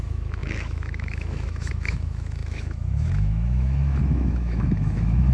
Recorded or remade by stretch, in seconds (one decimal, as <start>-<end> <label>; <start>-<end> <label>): 0.0-5.3 remade